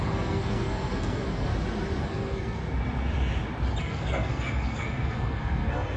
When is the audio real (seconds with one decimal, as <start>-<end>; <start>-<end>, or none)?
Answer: 1.5-2.0; 2.6-3.8